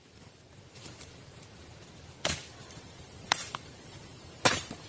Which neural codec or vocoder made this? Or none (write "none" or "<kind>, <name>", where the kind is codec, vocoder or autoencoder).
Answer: vocoder, BigVGAN v2